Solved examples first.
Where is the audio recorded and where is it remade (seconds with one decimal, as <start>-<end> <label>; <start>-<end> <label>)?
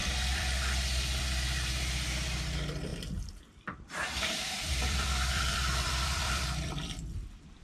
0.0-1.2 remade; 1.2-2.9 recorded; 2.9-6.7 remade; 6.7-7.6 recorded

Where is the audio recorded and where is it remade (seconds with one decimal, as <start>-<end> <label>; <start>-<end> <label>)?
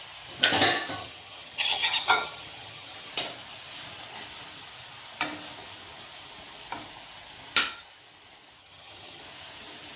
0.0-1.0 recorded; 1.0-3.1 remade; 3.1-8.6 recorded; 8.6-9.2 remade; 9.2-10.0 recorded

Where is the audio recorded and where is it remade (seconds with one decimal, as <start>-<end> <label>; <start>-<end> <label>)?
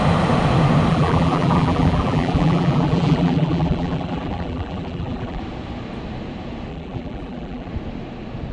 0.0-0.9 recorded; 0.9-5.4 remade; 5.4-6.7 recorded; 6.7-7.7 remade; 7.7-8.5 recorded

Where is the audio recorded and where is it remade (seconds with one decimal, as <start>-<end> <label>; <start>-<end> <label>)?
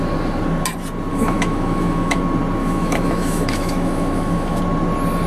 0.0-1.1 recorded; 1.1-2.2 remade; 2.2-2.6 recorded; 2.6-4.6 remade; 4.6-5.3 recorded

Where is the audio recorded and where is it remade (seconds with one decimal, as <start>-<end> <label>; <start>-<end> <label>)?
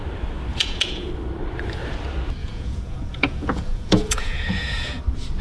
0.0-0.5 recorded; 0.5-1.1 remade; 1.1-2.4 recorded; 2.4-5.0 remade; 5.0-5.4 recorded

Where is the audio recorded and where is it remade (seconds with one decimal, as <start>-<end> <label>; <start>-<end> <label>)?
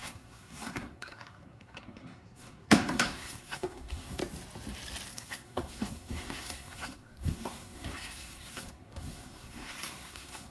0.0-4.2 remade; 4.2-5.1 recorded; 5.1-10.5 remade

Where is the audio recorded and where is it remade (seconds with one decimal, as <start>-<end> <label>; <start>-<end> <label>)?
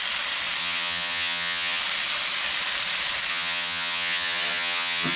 0.0-0.6 recorded; 0.6-1.8 remade; 1.8-3.3 recorded; 3.3-5.2 remade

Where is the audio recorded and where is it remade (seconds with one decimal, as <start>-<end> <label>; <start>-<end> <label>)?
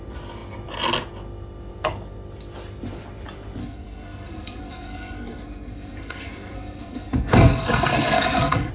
0.0-3.6 recorded; 3.6-8.7 remade